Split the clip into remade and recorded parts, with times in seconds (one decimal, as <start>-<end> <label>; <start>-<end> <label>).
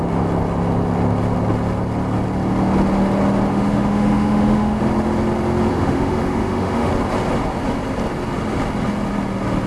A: 0.0-3.5 recorded; 3.5-4.8 remade; 4.8-5.7 recorded; 5.7-6.9 remade; 6.9-9.7 recorded